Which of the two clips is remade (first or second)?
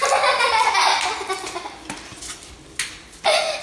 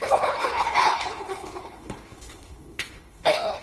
second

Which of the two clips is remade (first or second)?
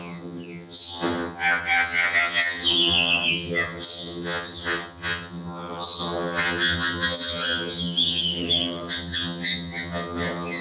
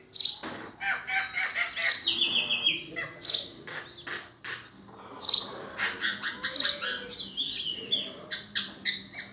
first